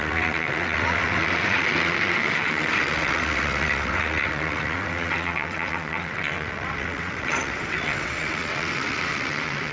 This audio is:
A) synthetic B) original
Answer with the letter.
A